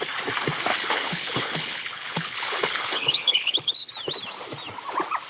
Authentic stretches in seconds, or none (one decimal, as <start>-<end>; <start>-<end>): 0.0-0.7; 3.9-5.3